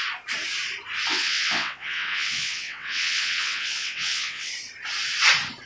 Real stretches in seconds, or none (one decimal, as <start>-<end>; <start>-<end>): 0.0-1.1; 4.5-5.7

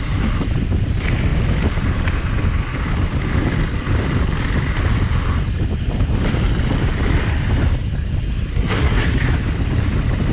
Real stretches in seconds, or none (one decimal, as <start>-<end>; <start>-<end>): 0.0-8.5; 9.1-10.3

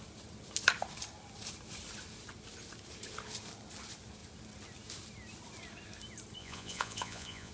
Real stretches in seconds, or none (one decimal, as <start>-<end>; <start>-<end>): 0.0-6.4

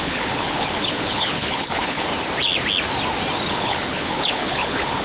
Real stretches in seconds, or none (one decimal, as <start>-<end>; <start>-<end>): 2.1-3.5

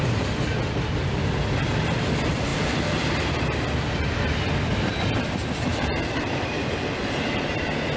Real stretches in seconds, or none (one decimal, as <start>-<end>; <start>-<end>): 0.0-2.5; 3.4-5.7; 6.8-8.0

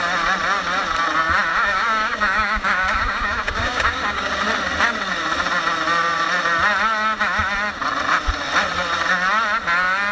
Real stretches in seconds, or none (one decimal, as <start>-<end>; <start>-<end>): 0.0-1.5; 4.3-10.1

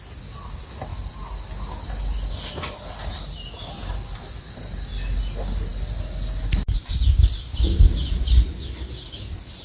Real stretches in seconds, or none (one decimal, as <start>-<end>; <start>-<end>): 0.0-9.6

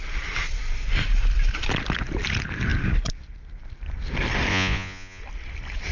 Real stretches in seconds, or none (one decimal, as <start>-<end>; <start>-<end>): 0.0-4.5; 5.2-5.9